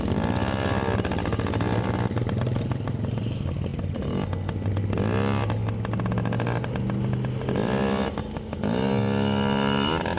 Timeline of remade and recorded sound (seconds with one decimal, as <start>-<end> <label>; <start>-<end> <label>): 0.0-10.2 recorded